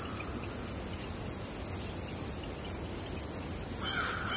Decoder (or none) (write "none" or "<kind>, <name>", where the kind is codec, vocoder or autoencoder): none